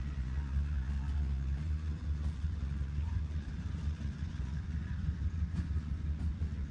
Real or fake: fake